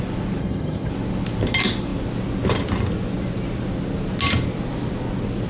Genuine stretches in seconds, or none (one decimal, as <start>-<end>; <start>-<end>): 0.0-0.4; 0.9-5.5